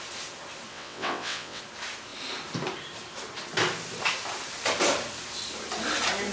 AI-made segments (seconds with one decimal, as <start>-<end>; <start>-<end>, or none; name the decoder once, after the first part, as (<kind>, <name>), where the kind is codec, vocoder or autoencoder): 0.7-1.6 (vocoder, WaveNeXt)